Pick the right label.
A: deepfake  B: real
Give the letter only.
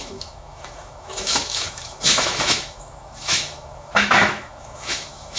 A